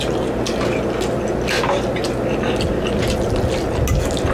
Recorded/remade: recorded